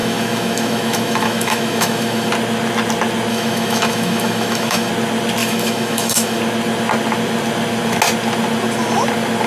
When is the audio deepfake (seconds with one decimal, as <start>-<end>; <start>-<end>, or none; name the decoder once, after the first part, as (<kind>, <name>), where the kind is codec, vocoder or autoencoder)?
0.0-2.3 (autoencoder, DAC-VAE); 3.3-4.9; 5.4-6.4